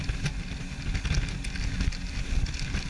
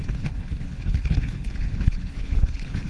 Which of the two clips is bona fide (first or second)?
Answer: first